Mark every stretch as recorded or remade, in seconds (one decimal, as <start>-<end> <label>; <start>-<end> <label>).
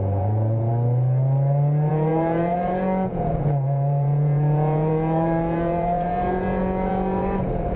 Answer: 0.0-0.7 remade; 0.7-1.9 recorded; 1.9-7.8 remade